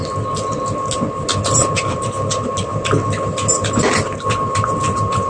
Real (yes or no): yes